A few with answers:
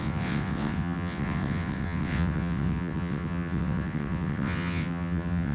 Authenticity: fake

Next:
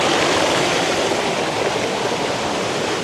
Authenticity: real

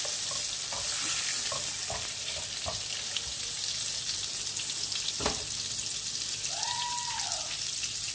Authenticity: real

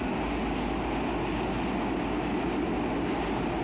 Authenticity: real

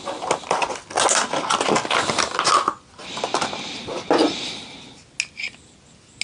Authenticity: real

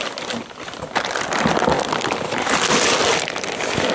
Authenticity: fake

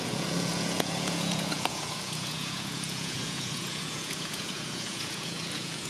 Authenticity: fake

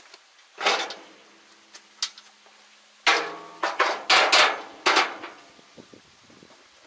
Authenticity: real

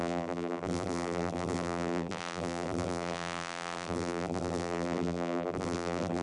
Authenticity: fake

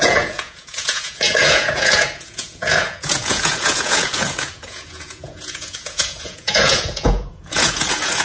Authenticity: fake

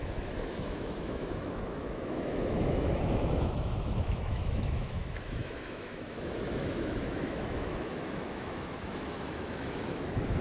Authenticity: fake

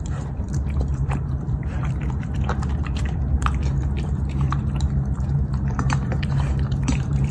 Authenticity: fake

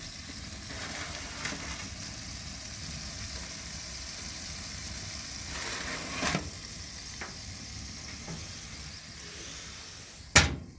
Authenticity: real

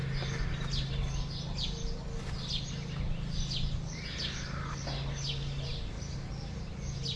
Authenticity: real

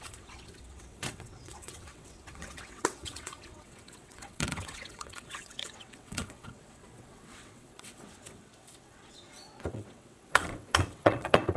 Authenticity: fake